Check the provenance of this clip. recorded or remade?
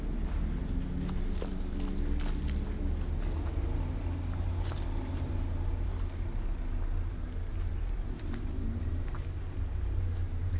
recorded